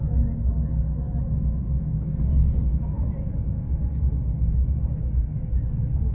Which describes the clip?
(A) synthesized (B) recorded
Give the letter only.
B